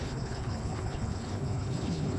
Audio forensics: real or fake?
fake